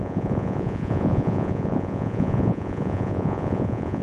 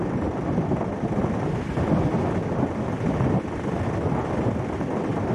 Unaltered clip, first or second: second